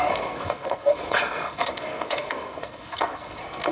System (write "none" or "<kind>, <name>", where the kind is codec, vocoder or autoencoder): codec, SNAC